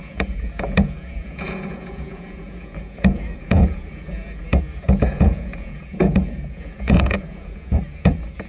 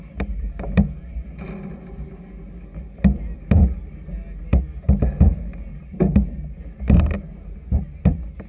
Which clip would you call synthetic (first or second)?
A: first